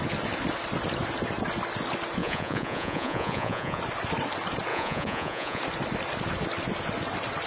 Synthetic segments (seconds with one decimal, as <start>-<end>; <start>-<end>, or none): 2.2-3.8; 4.7-5.6